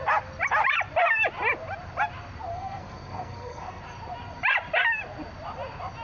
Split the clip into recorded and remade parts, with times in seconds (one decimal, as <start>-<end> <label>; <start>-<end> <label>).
0.0-2.5 recorded; 2.5-3.8 remade; 3.8-6.0 recorded